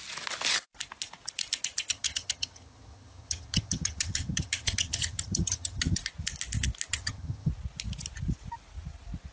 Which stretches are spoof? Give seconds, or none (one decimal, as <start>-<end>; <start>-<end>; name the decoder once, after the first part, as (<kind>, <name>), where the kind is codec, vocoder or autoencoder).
1.9-6.0 (vocoder, HiFi-GAN); 6.9-7.5